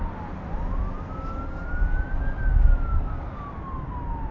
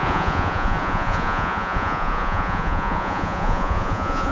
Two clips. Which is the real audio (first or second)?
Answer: first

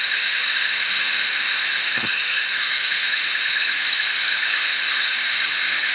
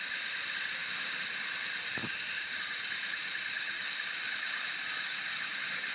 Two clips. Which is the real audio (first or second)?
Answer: second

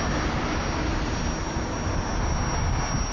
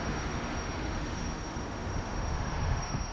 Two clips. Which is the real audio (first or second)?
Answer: first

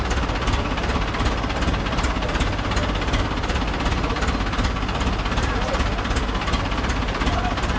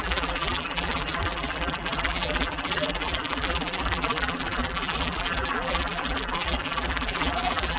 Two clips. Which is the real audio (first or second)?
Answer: first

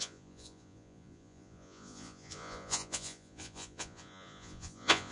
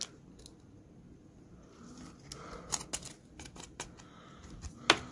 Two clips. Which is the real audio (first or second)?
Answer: second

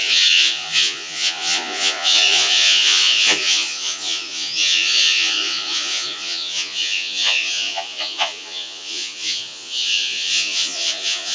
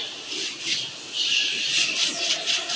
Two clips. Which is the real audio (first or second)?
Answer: second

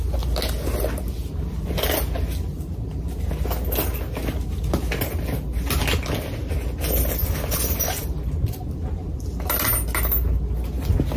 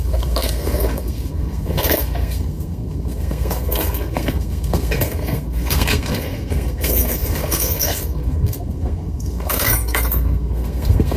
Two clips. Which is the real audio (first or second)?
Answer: first